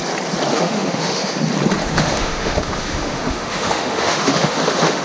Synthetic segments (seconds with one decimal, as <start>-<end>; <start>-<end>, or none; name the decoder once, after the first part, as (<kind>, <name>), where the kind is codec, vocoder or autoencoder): 0.5-1.2 (autoencoder, DAC-VAE); 1.8-5.0